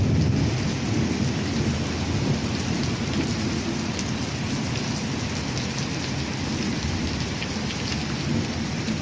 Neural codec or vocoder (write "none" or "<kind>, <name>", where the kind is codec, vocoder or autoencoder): none